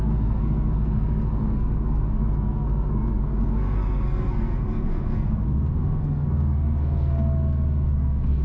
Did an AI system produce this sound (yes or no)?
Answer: yes